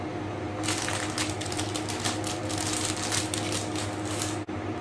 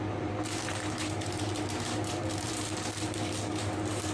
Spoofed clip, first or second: second